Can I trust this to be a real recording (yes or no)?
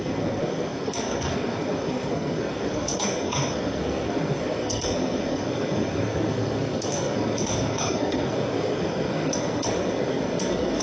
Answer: no